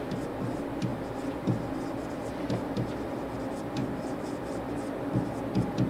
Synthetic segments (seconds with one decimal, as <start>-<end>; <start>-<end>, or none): none